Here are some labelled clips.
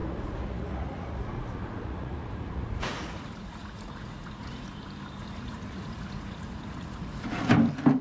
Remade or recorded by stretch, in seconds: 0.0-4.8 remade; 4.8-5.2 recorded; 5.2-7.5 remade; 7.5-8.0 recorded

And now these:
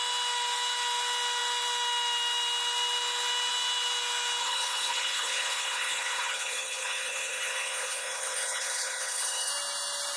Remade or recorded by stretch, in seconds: 0.0-4.4 recorded; 4.4-9.5 remade; 9.5-10.2 recorded

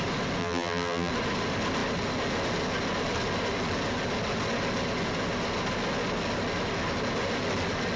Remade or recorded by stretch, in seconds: 0.0-0.4 recorded; 0.4-1.1 remade; 1.1-8.0 recorded

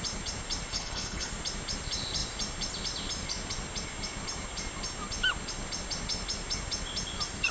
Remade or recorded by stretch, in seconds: 0.0-0.7 recorded; 0.7-1.3 remade; 1.3-7.5 recorded